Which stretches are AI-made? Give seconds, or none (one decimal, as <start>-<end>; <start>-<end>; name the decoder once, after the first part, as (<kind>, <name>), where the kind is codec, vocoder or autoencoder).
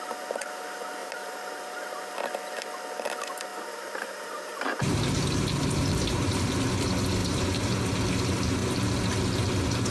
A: 1.0-2.1 (vocoder, BigVGAN v2); 3.5-6.5; 7.2-7.8